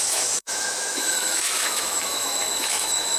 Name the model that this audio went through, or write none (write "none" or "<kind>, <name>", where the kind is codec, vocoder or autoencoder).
autoencoder, DAC-VAE